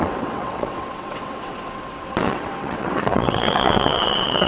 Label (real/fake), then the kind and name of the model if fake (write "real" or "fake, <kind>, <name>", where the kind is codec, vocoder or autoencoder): fake, vocoder, WaveNeXt